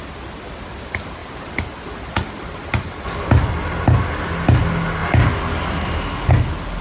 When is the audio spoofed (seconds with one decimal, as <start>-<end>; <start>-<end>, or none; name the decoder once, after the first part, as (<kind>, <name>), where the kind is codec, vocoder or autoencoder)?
none